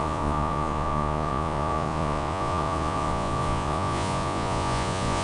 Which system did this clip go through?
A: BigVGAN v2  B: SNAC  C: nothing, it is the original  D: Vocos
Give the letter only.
D